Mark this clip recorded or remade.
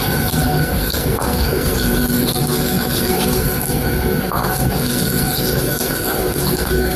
remade